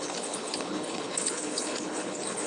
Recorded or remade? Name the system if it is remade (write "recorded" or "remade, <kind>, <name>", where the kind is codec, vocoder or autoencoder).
remade, codec, HILCodec